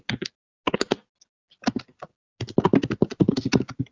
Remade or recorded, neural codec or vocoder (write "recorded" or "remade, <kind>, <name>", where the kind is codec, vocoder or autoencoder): recorded